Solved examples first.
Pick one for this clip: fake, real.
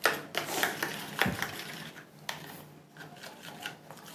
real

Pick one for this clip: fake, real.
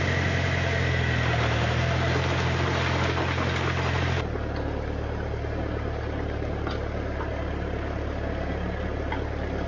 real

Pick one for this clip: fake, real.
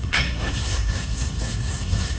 fake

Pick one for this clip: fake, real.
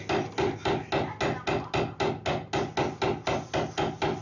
real